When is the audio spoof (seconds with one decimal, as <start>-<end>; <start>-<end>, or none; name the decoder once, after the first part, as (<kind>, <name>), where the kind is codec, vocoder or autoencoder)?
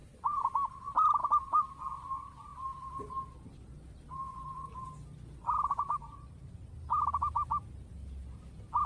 none